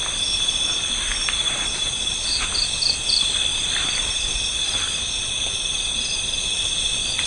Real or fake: fake